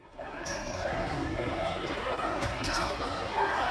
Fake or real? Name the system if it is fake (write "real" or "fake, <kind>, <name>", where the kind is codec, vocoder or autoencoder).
fake, codec, SNAC